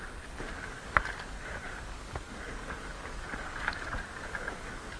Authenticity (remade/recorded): remade